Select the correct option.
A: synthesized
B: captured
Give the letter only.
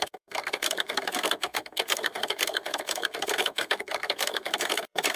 A